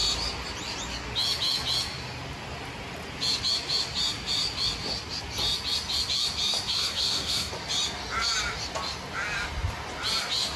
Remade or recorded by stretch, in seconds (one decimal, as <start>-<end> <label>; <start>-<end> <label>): 0.0-6.7 recorded; 6.7-7.5 remade; 7.5-10.6 recorded

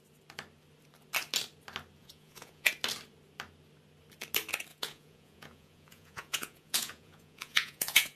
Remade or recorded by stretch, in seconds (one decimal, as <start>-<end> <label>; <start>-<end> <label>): 0.0-2.0 recorded; 2.0-2.7 remade; 2.7-4.7 recorded; 4.7-8.2 remade

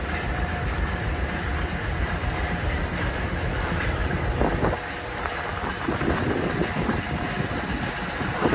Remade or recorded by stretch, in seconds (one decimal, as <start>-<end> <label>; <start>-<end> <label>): 0.0-1.5 remade; 1.5-2.0 recorded; 2.0-4.0 remade; 4.0-8.1 recorded; 8.1-8.5 remade

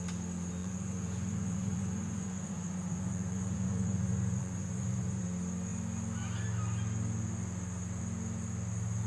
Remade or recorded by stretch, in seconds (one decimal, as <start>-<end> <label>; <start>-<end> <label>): 0.0-0.6 recorded; 0.6-5.2 remade; 5.2-9.1 recorded

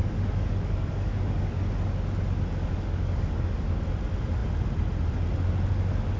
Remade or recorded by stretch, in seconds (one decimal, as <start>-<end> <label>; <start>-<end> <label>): 0.0-1.6 remade; 1.6-2.6 recorded; 2.6-3.5 remade; 3.5-6.2 recorded

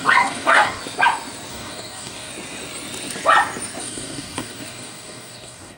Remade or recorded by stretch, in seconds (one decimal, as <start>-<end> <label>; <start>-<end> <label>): 0.0-0.8 remade; 0.8-1.5 recorded; 1.5-2.3 remade; 2.3-3.8 recorded; 3.8-5.8 remade

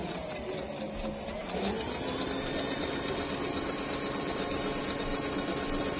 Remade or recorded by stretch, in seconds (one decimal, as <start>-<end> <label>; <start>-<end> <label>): 0.0-6.0 recorded

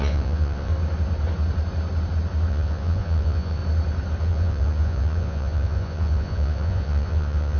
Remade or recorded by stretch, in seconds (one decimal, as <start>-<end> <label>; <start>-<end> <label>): 0.0-0.7 remade; 0.7-2.5 recorded; 2.5-3.6 remade; 3.6-4.2 recorded; 4.2-7.6 remade